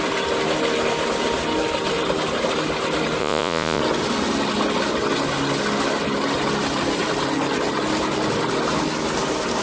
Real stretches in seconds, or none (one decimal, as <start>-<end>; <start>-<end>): 0.0-3.2; 3.8-9.6